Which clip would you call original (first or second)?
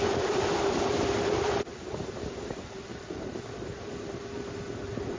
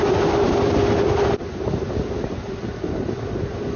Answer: second